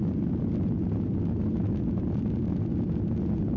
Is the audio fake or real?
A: real